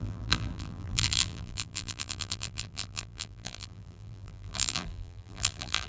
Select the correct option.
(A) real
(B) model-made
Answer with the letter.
B